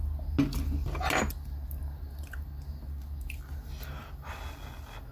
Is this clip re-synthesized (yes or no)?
no